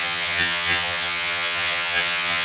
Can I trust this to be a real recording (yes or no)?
no